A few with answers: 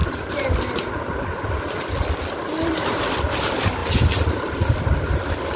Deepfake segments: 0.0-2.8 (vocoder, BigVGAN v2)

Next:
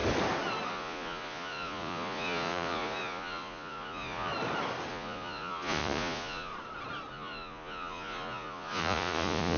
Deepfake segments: 0.7-4.3 (vocoder, Vocos); 4.9-6.5; 7.1-9.6

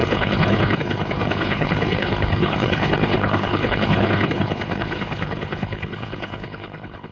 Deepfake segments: 0.0-7.1 (codec, HILCodec)

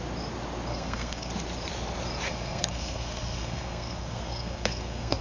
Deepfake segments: 0.7-1.3 (codec, SNAC); 2.3-5.2

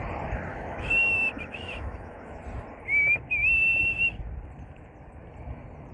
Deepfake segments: 0.5-2.4 (autoencoder, DAC-VAE)

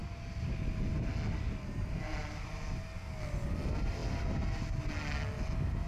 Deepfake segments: none